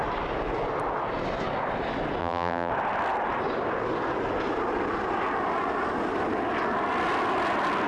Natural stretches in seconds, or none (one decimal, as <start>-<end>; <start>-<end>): 0.0-2.2; 2.7-7.9